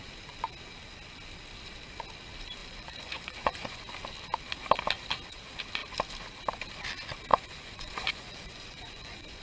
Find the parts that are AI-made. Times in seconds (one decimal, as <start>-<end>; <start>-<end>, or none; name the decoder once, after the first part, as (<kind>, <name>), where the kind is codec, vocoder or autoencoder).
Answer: 2.6-3.9 (vocoder, Vocos); 7.3-9.4